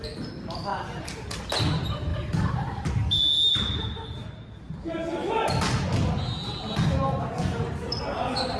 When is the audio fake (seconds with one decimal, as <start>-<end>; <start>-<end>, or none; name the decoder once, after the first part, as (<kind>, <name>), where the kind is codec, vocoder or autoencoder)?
0.7-1.4 (vocoder, BigVGAN v2)